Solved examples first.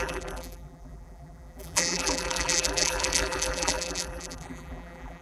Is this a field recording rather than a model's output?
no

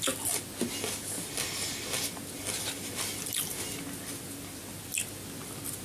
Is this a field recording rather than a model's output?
yes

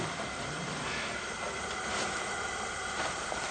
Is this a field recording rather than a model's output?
no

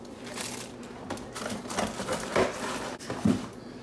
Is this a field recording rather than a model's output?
yes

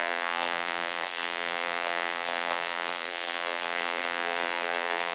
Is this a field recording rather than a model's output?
no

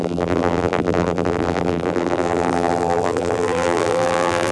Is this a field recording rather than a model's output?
no